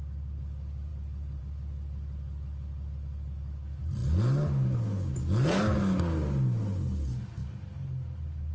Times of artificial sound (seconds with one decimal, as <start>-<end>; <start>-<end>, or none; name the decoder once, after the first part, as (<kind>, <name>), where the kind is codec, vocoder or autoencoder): none